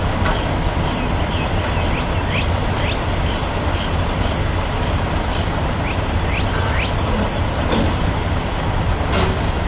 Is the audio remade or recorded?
recorded